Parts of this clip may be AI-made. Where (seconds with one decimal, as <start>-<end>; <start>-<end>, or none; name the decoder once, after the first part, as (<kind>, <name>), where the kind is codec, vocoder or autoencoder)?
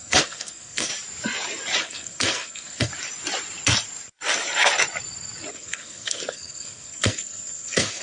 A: 0.0-0.9 (codec, SNAC); 1.8-2.9; 5.5-8.0